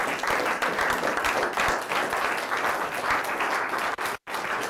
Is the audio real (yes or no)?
yes